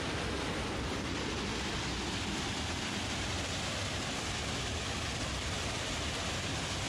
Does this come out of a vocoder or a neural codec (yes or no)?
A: no